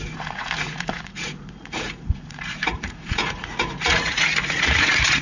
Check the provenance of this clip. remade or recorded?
remade